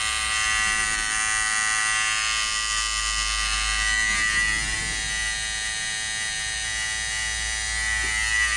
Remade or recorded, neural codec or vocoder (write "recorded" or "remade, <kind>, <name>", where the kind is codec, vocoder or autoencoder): recorded